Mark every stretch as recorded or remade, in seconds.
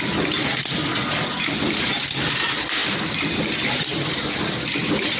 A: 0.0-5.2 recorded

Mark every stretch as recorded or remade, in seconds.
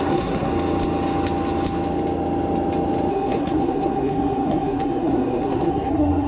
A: 0.0-0.5 remade; 0.5-3.1 recorded; 3.1-6.3 remade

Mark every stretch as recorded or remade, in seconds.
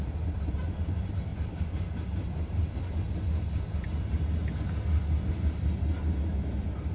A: 0.0-6.9 recorded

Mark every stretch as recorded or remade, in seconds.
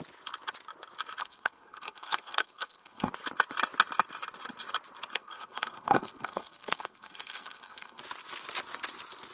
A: 0.0-1.2 recorded; 1.2-3.1 remade; 3.1-5.1 recorded; 5.1-8.0 remade; 8.0-9.3 recorded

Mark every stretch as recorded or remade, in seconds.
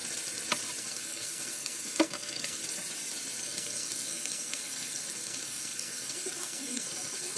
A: 0.0-0.8 recorded; 0.8-2.6 remade; 2.6-3.4 recorded; 3.4-7.4 remade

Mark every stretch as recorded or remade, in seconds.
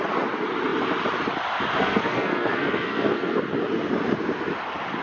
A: 0.0-1.8 recorded; 1.8-3.4 remade; 3.4-5.0 recorded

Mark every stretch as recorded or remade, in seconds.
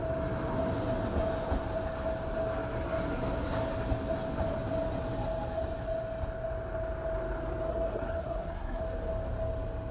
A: 0.0-7.7 recorded; 7.7-8.8 remade; 8.8-9.9 recorded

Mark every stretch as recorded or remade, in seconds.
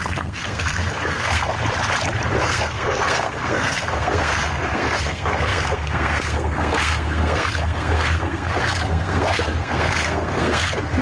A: 0.0-1.5 remade; 1.5-2.4 recorded; 2.4-11.0 remade